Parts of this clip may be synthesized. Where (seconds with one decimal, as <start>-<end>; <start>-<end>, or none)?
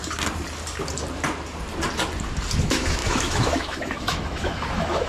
2.6-5.1